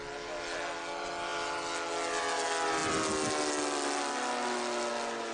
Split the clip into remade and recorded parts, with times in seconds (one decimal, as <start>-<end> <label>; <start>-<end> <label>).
0.0-5.3 recorded